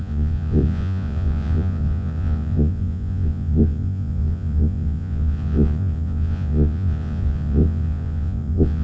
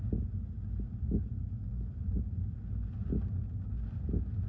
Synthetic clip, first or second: first